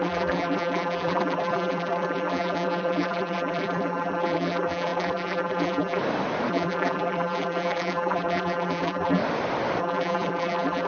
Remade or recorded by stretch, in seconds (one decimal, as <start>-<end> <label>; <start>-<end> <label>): 0.0-6.0 remade; 6.0-6.5 recorded; 6.5-9.2 remade; 9.2-9.8 recorded; 9.8-10.9 remade